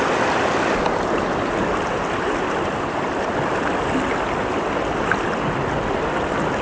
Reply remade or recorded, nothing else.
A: recorded